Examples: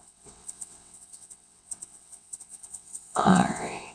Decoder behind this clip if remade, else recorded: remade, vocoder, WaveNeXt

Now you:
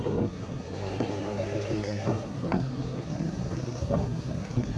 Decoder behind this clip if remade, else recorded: remade, codec, SNAC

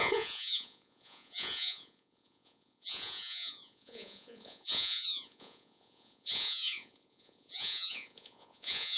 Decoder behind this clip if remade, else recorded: remade, vocoder, Vocos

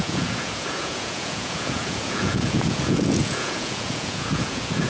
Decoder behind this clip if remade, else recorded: remade, vocoder, Vocos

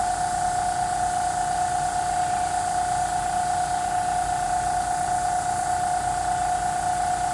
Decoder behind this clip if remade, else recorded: recorded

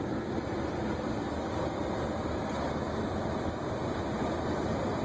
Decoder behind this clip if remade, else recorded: remade, vocoder, BigVGAN v2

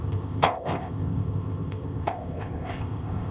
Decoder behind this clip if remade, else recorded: remade, codec, ZipCodec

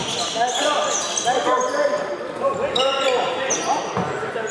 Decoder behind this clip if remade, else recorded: recorded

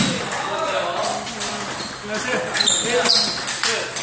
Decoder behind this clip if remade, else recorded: recorded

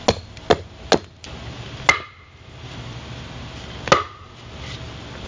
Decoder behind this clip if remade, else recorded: recorded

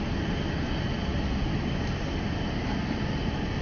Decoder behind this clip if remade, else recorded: recorded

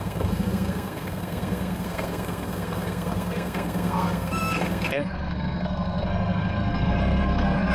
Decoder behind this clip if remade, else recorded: remade, codec, SNAC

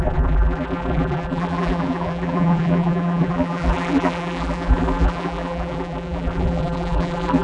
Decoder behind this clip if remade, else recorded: remade, vocoder, BigVGAN v2